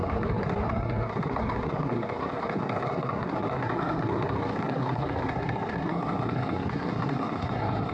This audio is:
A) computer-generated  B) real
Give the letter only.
A